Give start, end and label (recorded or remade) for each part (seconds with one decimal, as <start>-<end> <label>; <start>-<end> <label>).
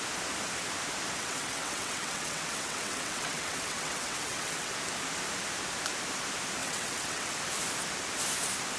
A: 0.0-1.2 recorded; 1.2-4.7 remade; 4.7-6.6 recorded; 6.6-7.3 remade; 7.3-8.8 recorded